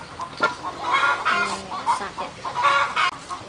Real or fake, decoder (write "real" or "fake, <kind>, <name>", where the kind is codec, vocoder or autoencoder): real